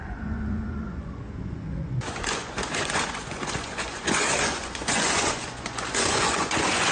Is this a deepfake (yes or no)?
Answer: yes